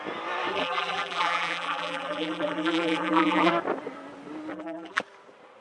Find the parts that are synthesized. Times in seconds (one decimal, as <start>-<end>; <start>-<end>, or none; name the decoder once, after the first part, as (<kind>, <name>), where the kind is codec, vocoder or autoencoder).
0.5-3.5 (vocoder, BigVGAN v2); 4.5-5.0